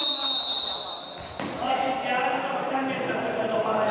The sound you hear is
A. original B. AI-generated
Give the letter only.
A